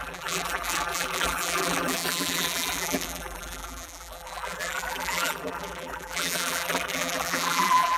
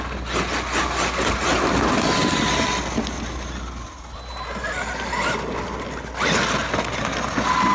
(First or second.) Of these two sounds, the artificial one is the first